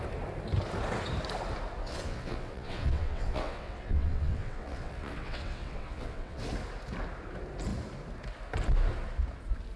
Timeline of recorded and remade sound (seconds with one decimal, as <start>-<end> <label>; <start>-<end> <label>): 0.0-1.8 recorded; 1.8-6.4 remade; 6.4-9.8 recorded